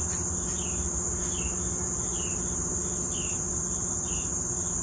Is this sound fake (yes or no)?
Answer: no